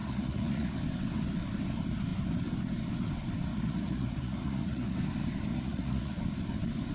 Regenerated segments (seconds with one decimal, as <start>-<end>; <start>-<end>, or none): 0.0-0.7; 3.5-5.0; 5.5-6.2